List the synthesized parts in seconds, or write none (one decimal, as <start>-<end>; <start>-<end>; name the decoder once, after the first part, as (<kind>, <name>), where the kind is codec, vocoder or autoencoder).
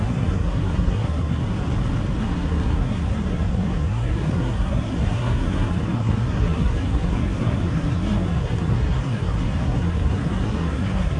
0.0-1.4 (codec, SNAC); 2.2-11.2